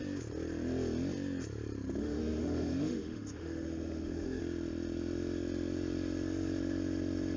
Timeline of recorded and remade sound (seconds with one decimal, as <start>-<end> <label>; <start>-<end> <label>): 0.0-2.0 recorded; 2.0-4.4 remade; 4.4-7.4 recorded